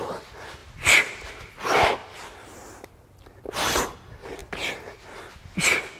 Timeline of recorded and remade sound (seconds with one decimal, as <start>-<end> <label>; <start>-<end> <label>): 0.0-0.6 recorded; 0.6-1.3 remade; 1.3-2.0 recorded; 2.0-2.9 remade; 2.9-4.4 recorded; 4.4-5.0 remade; 5.0-6.0 recorded